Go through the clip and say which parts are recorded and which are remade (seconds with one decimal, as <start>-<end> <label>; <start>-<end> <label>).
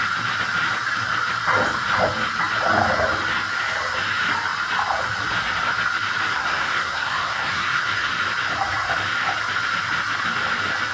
0.0-6.3 recorded; 6.3-8.1 remade; 8.1-10.9 recorded